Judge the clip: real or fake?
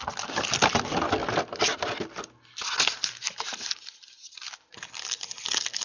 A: real